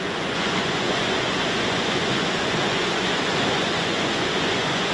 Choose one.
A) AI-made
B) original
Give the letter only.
A